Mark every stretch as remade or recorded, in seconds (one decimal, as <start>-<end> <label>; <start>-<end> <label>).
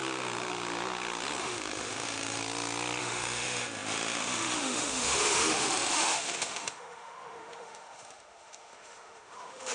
0.0-1.4 recorded; 1.4-2.4 remade; 2.4-3.0 recorded; 3.0-9.7 remade